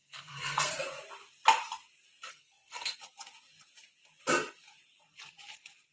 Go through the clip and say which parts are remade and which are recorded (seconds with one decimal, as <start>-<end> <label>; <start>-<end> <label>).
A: 0.0-0.7 remade; 0.7-2.3 recorded; 2.3-2.9 remade; 2.9-5.9 recorded